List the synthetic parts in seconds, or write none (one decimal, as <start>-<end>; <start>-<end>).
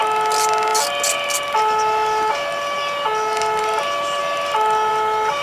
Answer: none